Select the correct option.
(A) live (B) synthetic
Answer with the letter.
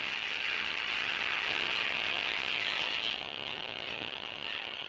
B